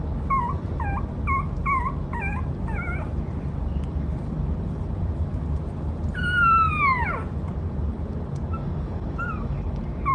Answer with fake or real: real